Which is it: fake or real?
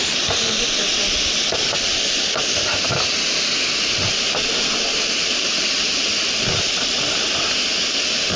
real